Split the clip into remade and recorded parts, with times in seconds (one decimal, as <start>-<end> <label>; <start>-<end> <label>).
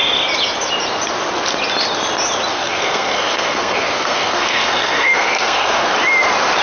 0.0-2.5 recorded; 2.5-5.9 remade; 5.9-6.6 recorded